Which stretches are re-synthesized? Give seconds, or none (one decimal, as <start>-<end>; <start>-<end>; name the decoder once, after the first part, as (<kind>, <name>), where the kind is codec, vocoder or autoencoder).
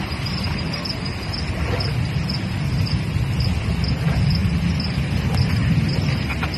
none